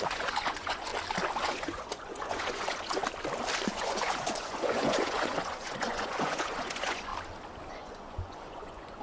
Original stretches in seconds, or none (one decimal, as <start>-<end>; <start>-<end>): 0.9-1.4; 3.0-3.7; 7.1-7.7